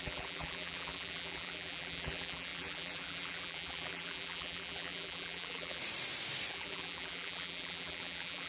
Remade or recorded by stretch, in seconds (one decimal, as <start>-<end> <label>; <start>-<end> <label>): 0.0-5.8 remade; 5.8-6.5 recorded; 6.5-8.5 remade